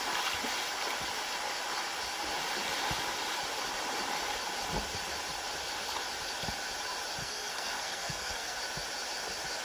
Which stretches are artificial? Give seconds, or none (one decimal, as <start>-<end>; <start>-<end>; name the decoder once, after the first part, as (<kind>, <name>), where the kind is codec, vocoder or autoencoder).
7.2-8.6 (codec, SNAC)